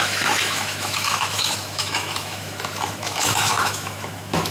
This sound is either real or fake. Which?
fake